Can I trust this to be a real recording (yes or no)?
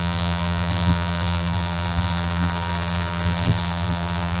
no